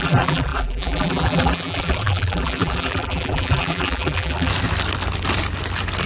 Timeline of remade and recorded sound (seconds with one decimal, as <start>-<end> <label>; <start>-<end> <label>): 0.0-4.5 remade; 4.5-6.1 recorded